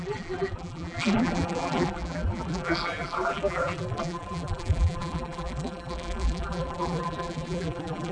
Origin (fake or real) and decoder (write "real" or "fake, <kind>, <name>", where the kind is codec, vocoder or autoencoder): fake, vocoder, BigVGAN v2